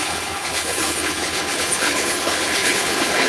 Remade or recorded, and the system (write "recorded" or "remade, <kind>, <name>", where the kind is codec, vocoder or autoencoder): remade, codec, HILCodec